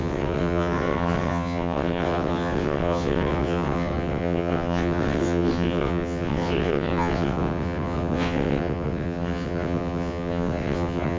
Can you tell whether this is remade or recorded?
remade